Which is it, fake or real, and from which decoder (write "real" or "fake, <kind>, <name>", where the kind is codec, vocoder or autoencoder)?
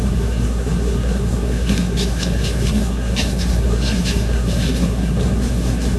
fake, codec, SNAC